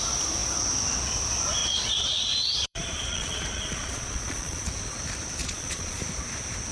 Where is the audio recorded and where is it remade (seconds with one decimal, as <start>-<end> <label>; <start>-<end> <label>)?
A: 0.0-1.6 recorded; 1.6-4.7 remade; 4.7-5.4 recorded; 5.4-6.0 remade; 6.0-6.7 recorded